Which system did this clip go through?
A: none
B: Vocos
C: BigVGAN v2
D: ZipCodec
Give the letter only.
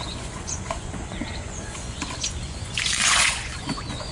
B